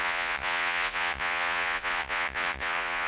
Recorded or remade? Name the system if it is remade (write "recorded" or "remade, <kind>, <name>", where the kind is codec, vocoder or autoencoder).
remade, vocoder, Vocos